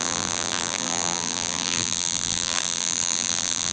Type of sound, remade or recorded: remade